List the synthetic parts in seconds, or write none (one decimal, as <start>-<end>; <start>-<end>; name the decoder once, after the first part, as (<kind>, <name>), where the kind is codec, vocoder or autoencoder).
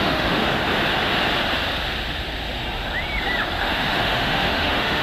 0.0-0.6 (autoencoder, DAC-VAE); 3.6-5.0